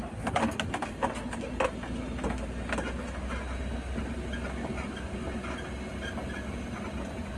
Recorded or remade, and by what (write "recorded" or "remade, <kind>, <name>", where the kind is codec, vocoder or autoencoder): recorded